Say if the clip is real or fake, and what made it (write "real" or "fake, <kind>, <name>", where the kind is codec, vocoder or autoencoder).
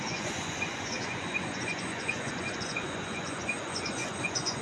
fake, vocoder, Vocos